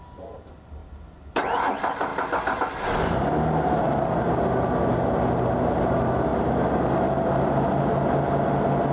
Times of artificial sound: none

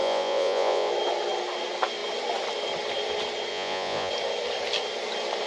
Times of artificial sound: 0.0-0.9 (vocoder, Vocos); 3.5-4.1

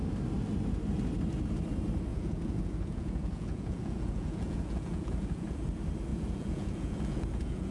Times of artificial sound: 2.1-5.6 (vocoder, Vocos); 6.1-7.7

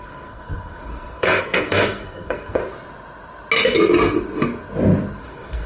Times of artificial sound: 0.0-2.6 (codec, SNAC); 5.2-5.7

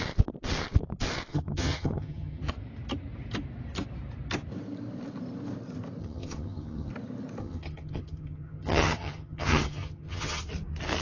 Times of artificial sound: 1.3-2.5 (vocoder, HiFi-GAN); 6.0-6.9; 7.4-10.4

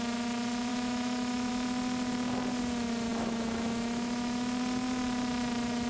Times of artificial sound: 0.7-1.5 (autoencoder, DAC-VAE); 3.1-4.6

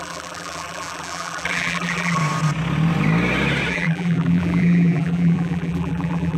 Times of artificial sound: 0.0-2.2 (vocoder, BigVGAN v2); 3.7-6.4